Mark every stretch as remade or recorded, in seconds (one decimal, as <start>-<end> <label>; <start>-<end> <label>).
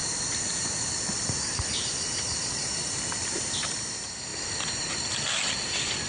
0.0-6.1 recorded